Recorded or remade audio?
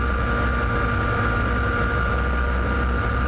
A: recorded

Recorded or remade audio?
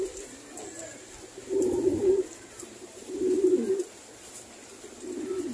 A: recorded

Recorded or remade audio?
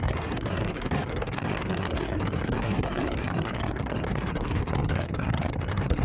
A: remade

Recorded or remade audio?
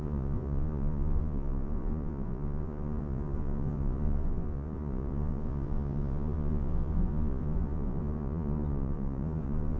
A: remade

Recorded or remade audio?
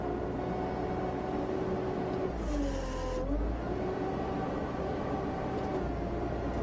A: recorded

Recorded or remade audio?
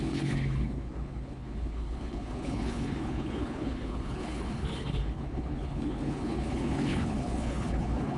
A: remade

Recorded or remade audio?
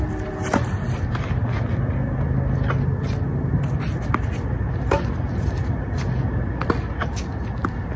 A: recorded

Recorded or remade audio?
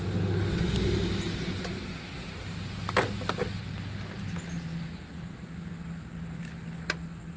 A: recorded